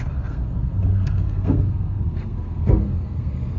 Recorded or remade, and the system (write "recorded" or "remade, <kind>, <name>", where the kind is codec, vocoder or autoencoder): remade, codec, SNAC